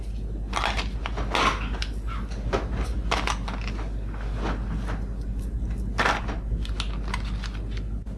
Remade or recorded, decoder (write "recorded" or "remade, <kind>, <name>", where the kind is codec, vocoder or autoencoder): recorded